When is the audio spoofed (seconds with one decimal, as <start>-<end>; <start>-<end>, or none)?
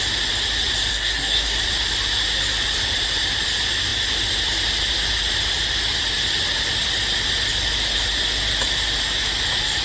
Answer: 0.9-1.6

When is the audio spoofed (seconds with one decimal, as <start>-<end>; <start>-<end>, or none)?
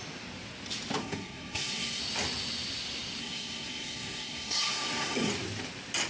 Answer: 1.0-2.0; 3.2-5.3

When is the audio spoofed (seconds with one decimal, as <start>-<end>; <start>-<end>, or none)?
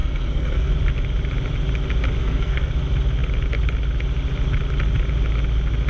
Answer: 0.0-0.7; 2.2-2.7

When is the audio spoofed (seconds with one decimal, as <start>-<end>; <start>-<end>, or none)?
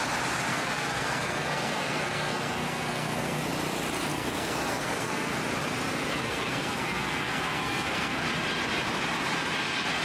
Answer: 0.5-3.5; 4.1-5.4; 6.2-8.2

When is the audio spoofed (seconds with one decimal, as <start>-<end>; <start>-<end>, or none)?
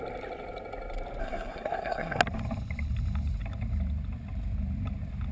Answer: 1.2-2.2